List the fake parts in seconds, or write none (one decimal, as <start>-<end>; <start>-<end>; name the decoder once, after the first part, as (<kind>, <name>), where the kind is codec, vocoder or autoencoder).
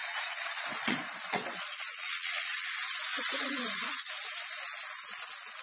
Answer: 0.0-2.7 (vocoder, Vocos); 3.1-4.1